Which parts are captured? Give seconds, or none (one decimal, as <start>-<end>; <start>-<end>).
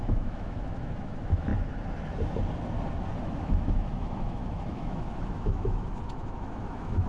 1.5-3.2